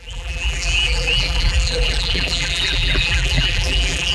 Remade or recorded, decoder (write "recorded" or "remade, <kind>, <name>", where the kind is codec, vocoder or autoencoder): remade, vocoder, BigVGAN v2